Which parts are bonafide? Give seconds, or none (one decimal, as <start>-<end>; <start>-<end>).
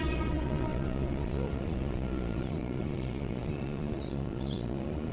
none